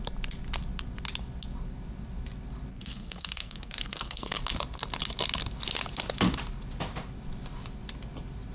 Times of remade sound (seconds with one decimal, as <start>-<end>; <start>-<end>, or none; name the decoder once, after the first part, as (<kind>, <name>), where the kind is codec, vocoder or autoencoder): 2.7-4.4 (codec, SNAC)